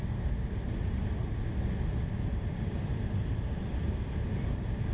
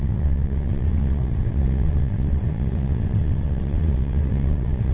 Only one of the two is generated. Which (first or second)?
second